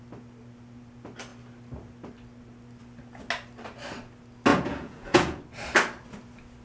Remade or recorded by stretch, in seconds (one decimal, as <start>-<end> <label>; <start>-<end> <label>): 0.0-4.5 recorded; 4.5-5.4 remade; 5.4-6.6 recorded